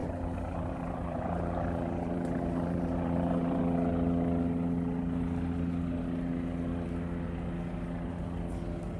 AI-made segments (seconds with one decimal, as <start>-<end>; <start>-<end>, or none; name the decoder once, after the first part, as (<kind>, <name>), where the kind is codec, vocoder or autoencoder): 0.0-3.6 (vocoder, BigVGAN v2)